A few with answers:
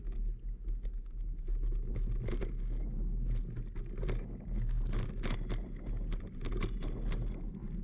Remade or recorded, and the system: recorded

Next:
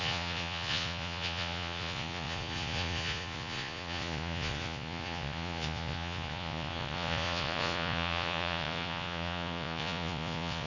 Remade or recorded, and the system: remade, vocoder, Vocos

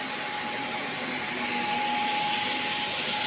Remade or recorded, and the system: recorded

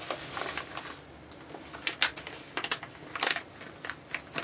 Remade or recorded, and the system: recorded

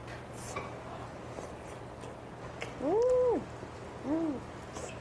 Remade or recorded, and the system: recorded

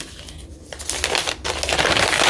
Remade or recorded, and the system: recorded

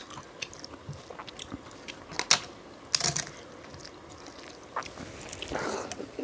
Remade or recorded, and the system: recorded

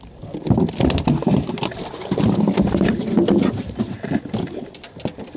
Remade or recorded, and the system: recorded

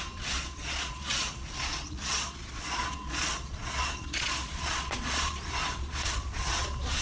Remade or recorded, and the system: remade, vocoder, Vocos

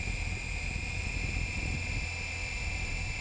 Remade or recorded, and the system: recorded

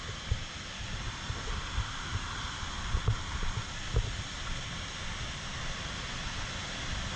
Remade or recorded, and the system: recorded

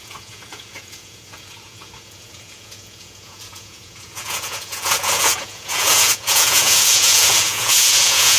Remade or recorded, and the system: remade, vocoder, Vocos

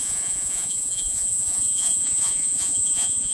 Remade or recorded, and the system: remade, vocoder, Vocos